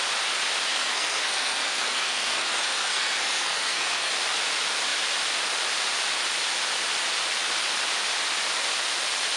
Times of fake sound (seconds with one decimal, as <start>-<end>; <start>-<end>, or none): 0.7-4.1